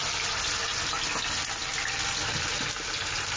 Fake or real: real